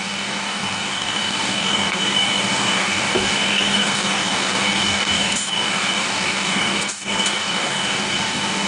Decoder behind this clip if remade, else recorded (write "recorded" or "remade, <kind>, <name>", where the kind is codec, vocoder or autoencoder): remade, codec, DAC